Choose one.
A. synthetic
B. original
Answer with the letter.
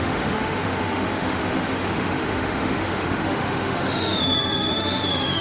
A